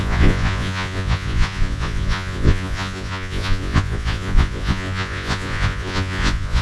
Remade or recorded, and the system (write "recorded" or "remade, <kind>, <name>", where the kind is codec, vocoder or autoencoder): remade, vocoder, Vocos